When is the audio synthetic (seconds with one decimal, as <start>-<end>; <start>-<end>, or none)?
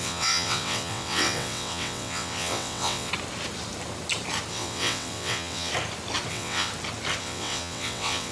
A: 0.0-3.1; 4.5-5.7; 6.3-6.7; 7.2-8.3